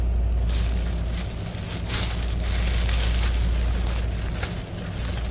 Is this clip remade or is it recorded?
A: recorded